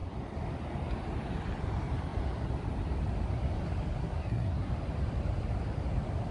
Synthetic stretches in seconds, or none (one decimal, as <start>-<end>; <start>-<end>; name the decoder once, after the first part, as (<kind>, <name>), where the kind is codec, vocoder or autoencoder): 4.0-4.7 (codec, SNAC)